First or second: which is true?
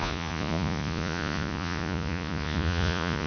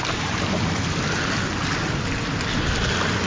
second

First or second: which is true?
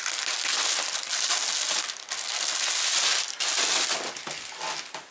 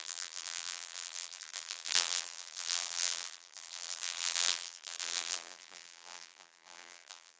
first